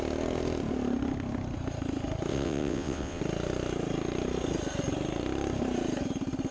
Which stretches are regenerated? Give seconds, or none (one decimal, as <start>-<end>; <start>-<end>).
2.3-3.2